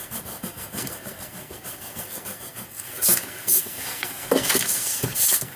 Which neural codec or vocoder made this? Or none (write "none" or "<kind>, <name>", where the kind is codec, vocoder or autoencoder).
codec, SNAC